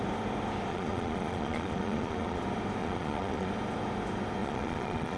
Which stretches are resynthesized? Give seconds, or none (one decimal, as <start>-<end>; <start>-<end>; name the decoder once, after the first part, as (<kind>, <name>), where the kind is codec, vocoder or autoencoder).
0.7-2.4 (vocoder, Vocos); 2.8-3.5; 4.4-5.2